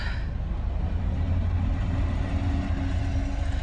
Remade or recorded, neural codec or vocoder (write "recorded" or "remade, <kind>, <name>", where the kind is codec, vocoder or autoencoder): recorded